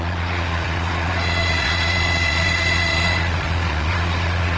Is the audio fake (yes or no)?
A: yes